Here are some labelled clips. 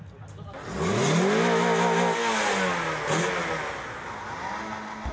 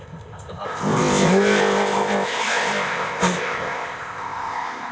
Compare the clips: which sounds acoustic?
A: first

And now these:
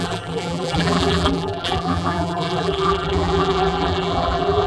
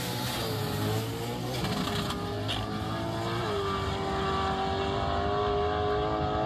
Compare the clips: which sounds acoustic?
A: second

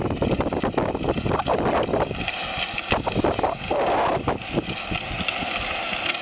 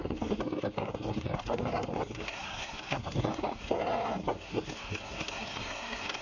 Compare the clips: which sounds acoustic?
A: first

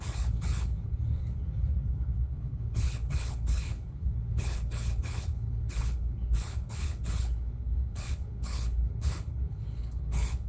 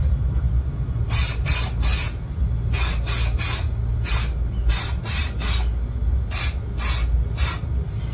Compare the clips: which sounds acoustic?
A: second